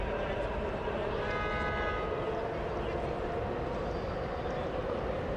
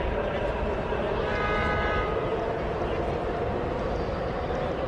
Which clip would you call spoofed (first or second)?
second